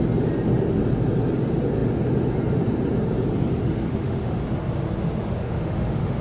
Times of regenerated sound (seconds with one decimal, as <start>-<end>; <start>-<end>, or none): 3.6-4.4; 5.4-6.2